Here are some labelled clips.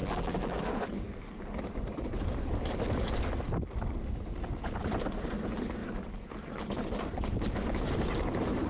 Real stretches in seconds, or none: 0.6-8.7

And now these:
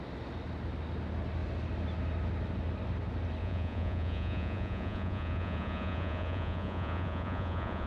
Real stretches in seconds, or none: 0.0-3.4

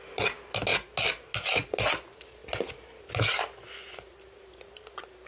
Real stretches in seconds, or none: 0.0-5.3